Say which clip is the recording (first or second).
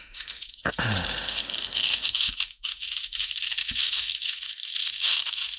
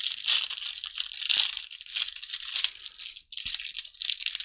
second